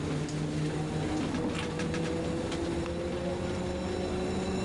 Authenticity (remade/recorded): recorded